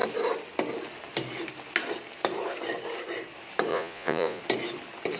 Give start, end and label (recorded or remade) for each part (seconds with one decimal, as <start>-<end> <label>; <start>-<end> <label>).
0.0-3.7 recorded; 3.7-4.4 remade; 4.4-5.2 recorded